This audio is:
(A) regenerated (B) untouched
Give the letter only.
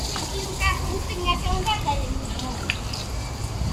B